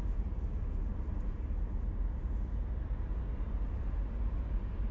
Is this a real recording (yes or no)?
yes